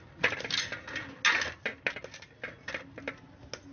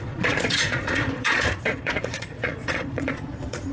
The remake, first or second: second